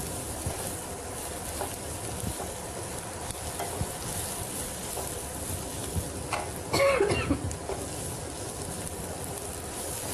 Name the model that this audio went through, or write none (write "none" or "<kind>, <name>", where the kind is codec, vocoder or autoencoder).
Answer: none